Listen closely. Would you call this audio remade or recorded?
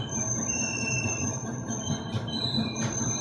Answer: remade